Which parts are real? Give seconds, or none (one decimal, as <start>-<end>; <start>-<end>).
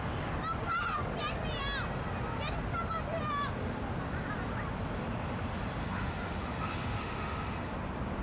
0.0-5.8; 7.7-8.2